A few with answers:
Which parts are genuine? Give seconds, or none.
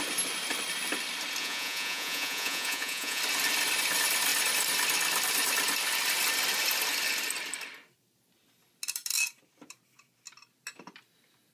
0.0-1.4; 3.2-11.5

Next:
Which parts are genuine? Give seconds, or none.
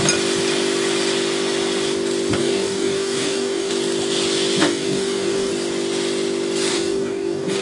0.0-2.4; 3.7-4.6; 5.5-6.7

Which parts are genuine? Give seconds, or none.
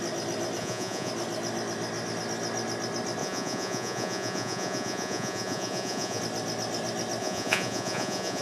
0.0-0.6; 1.1-3.2; 6.2-7.2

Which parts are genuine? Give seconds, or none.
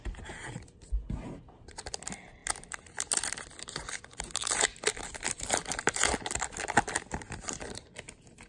0.0-8.5